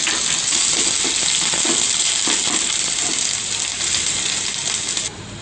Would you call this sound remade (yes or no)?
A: no